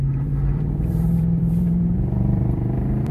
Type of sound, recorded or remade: remade